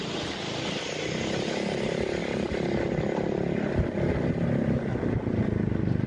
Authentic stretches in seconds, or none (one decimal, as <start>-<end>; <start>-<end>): 0.0-6.1